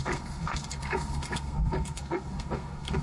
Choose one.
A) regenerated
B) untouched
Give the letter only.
A